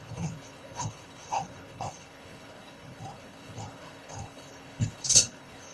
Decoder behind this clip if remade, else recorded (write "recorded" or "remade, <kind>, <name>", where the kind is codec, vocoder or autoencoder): remade, codec, HILCodec